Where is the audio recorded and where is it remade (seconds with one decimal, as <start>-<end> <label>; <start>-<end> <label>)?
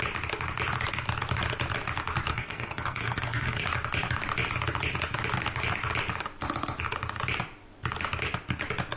0.0-2.3 recorded; 2.3-3.6 remade; 3.6-9.0 recorded